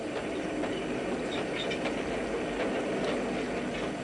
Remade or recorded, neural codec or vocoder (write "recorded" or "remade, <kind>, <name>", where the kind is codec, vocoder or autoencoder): recorded